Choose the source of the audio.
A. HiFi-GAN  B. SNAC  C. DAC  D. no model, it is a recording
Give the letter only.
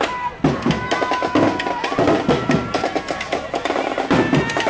D